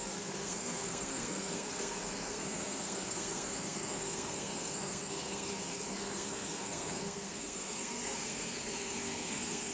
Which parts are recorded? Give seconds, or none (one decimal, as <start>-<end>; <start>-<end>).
none